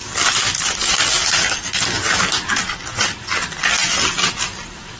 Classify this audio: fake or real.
fake